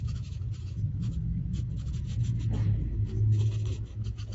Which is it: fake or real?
fake